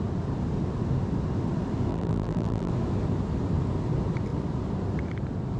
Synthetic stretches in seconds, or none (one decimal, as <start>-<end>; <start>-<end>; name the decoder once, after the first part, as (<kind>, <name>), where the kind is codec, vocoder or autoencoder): 1.9-2.7 (vocoder, BigVGAN v2)